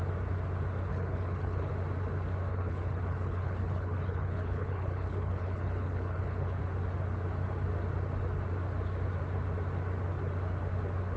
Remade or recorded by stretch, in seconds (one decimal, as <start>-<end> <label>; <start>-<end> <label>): 0.0-0.9 recorded; 0.9-1.7 remade; 1.7-2.5 recorded; 2.5-6.6 remade; 6.6-11.2 recorded